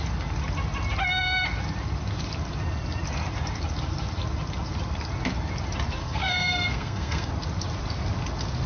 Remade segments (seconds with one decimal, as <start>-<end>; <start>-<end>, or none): 6.0-7.3